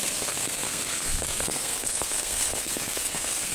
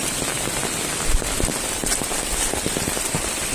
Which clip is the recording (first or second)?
second